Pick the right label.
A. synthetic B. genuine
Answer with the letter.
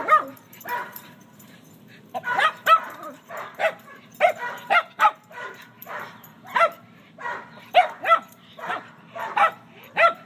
A